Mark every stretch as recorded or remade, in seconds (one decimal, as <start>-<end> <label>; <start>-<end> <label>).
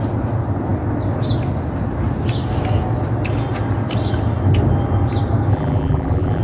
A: 0.0-5.5 recorded; 5.5-6.4 remade